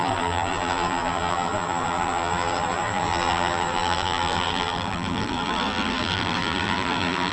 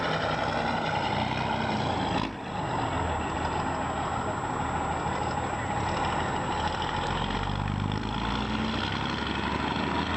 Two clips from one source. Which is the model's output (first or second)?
first